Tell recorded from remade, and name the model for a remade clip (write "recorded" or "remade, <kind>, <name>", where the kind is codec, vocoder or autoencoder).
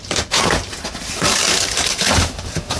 remade, vocoder, BigVGAN v2